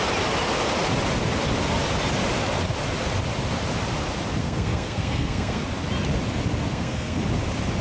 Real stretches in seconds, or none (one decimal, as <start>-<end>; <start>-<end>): 0.0-4.4; 5.6-6.7; 7.2-7.8